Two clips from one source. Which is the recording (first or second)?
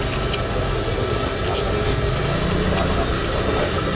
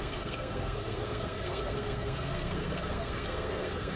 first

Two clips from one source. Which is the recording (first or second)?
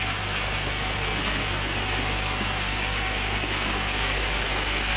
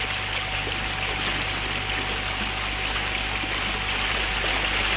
second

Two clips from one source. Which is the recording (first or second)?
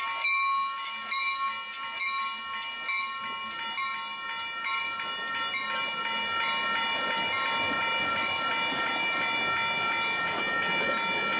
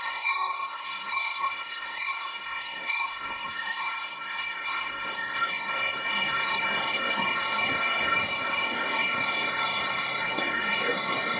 first